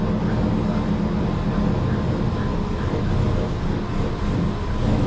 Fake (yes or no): no